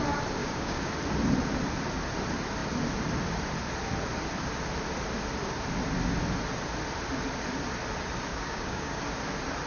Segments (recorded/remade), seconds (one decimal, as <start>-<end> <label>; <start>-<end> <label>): 0.0-0.4 recorded; 0.4-0.9 remade; 0.9-8.3 recorded; 8.3-9.0 remade; 9.0-9.7 recorded